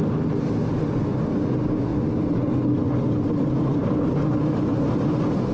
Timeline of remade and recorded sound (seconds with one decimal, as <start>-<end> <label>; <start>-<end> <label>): 0.0-5.5 recorded